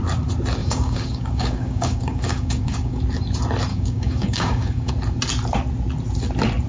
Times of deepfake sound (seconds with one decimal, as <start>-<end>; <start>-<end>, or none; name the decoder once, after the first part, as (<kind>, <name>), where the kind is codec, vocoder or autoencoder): 0.6-3.0 (codec, DAC); 3.7-4.9